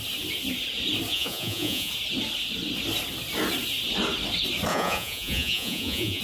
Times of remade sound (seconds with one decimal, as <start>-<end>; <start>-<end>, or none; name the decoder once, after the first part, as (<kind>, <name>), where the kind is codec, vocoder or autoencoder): 1.1-1.9 (vocoder, Vocos); 4.7-6.2